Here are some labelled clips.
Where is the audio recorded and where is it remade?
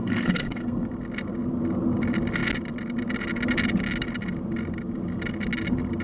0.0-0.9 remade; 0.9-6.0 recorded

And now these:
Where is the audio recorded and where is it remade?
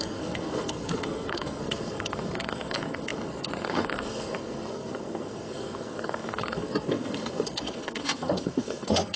0.0-9.2 remade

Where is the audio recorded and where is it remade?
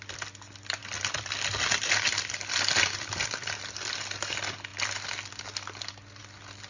0.0-6.7 recorded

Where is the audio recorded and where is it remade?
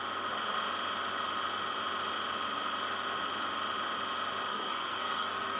0.0-4.5 recorded; 4.5-5.6 remade